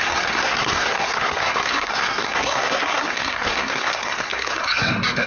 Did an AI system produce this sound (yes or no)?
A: yes